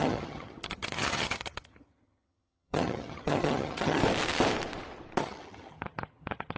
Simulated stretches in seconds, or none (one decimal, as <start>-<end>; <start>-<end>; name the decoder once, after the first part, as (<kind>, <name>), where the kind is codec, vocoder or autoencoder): 0.0-4.0 (vocoder, HiFi-GAN); 5.2-6.6